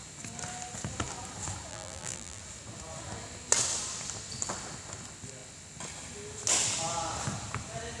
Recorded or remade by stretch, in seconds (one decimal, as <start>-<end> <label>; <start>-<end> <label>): 0.0-1.7 recorded; 1.7-2.4 remade; 2.4-8.0 recorded